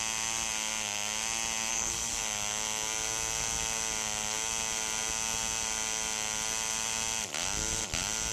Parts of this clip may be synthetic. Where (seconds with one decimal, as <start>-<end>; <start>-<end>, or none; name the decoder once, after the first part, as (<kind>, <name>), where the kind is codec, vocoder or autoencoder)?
1.7-2.2 (codec, SNAC)